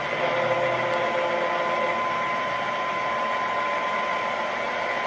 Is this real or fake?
real